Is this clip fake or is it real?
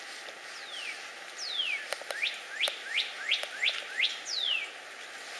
real